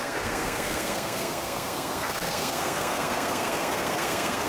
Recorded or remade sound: remade